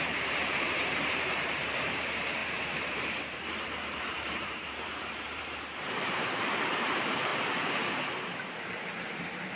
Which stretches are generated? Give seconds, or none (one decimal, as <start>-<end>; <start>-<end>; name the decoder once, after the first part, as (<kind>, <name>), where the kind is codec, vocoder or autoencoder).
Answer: 0.0-7.3 (vocoder, BigVGAN v2); 8.5-9.6